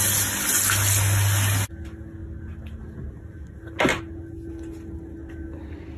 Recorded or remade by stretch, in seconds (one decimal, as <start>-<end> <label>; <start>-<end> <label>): 0.0-6.0 recorded